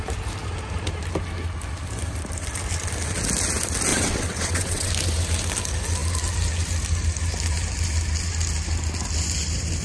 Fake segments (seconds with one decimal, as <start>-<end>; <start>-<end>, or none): 3.9-4.9